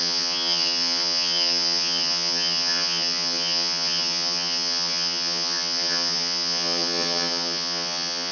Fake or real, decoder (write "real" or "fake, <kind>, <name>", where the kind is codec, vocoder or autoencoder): fake, vocoder, HiFi-GAN